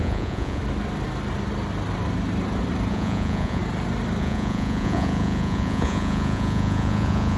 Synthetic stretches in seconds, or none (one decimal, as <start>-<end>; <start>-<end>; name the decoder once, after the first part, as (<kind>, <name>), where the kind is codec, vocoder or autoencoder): 0.0-0.6 (vocoder, Vocos); 2.9-3.6; 4.2-7.4